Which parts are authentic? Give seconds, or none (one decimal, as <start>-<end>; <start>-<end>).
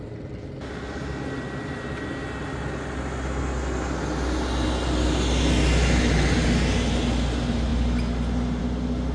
0.0-9.1